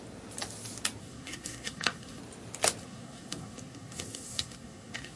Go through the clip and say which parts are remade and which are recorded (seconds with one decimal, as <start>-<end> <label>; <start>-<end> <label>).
0.0-1.0 recorded; 1.0-2.2 remade; 2.2-2.8 recorded; 2.8-5.2 remade